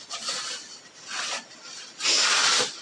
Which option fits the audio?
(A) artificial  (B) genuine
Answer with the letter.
B